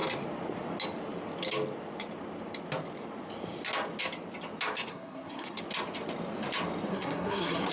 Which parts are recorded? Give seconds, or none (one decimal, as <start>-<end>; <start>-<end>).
0.0-4.9; 5.6-6.9